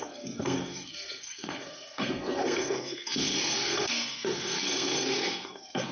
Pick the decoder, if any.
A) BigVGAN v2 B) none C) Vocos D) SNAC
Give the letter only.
D